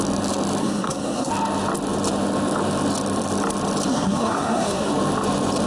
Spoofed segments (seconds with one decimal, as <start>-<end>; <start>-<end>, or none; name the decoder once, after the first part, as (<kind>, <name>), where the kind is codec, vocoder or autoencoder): 0.6-1.3 (codec, SNAC); 3.9-4.9